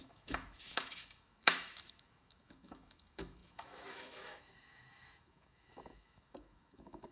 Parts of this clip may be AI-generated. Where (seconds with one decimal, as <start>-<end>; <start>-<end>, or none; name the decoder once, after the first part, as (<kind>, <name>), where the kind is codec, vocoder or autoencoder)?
0.0-7.1 (autoencoder, DAC-VAE)